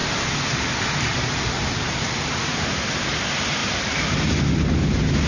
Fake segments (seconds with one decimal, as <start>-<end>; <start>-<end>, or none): 3.6-4.4